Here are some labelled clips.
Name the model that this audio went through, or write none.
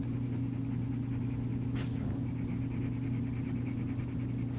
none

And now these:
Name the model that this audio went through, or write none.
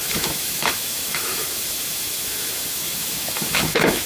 autoencoder, DAC-VAE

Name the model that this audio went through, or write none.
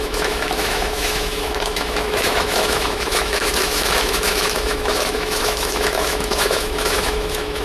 autoencoder, DAC-VAE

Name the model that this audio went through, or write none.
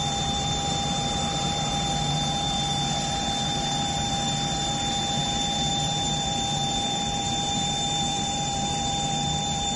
vocoder, BigVGAN v2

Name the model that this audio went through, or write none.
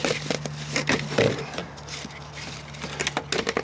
none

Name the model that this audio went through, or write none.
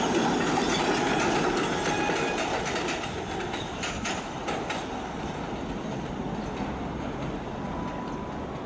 none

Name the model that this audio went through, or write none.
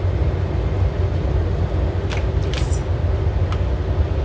none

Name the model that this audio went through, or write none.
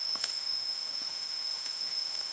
autoencoder, DAC-VAE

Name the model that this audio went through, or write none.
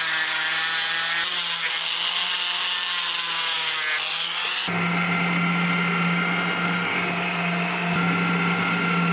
none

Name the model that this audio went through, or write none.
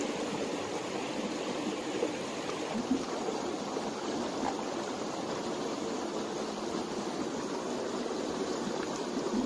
none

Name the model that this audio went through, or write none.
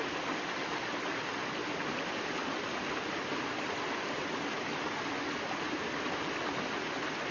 none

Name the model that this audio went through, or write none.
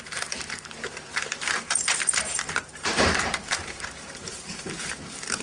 vocoder, BigVGAN v2